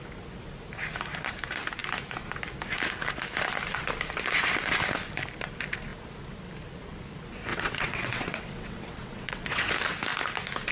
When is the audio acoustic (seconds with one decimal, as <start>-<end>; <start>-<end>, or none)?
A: 0.0-7.5; 9.7-10.7